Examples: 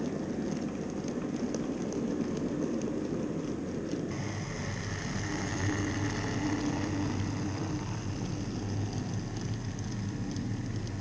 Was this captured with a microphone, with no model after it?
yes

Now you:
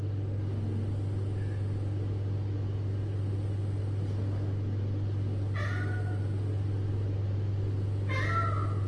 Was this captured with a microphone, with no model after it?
yes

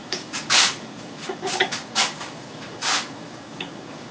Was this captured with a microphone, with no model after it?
no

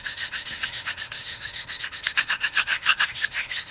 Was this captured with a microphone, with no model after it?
no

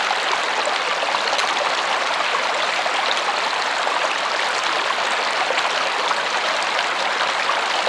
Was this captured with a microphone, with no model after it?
yes